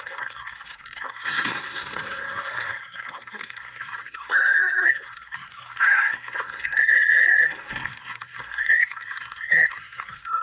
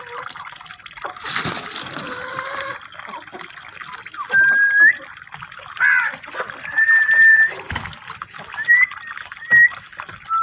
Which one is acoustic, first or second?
second